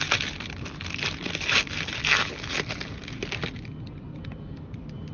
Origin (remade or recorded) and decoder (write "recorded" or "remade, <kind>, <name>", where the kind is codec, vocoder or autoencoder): recorded